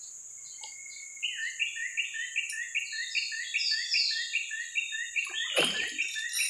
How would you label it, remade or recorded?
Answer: recorded